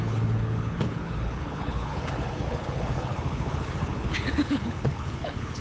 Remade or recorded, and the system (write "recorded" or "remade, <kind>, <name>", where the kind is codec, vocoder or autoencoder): remade, codec, HILCodec